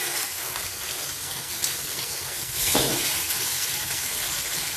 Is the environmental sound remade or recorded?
remade